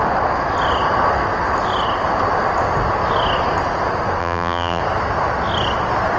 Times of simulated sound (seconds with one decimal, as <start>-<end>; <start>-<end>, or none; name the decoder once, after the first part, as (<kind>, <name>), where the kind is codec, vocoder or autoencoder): 4.2-4.8 (vocoder, BigVGAN v2)